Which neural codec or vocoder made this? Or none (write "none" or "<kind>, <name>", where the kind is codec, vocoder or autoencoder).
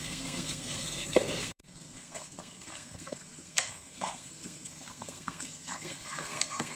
codec, SNAC